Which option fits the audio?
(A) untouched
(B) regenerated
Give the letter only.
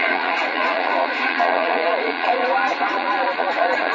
B